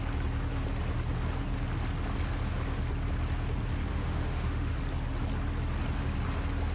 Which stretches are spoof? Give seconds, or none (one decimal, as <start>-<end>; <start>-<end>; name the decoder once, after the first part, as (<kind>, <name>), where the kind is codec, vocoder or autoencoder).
3.9-4.7 (autoencoder, DAC-VAE)